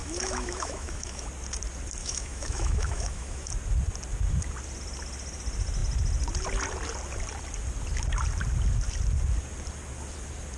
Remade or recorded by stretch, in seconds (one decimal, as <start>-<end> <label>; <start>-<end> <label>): 0.0-1.3 remade; 1.3-2.0 recorded; 2.0-3.5 remade; 3.5-10.6 recorded